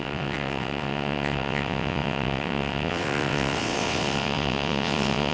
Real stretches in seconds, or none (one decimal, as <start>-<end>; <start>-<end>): none